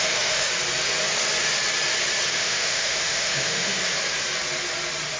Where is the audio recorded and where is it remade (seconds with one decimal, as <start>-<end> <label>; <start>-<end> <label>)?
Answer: 0.0-0.5 remade; 0.5-2.3 recorded; 2.3-3.8 remade; 3.8-5.2 recorded